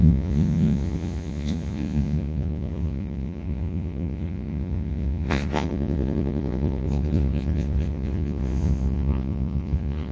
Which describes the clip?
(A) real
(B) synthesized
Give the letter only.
B